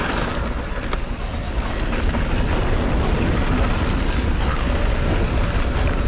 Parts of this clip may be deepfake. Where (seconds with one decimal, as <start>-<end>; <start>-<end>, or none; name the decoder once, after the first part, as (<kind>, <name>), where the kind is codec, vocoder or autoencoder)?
none